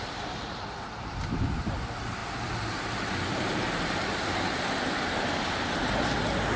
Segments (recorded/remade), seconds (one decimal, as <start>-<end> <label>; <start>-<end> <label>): 0.0-6.6 recorded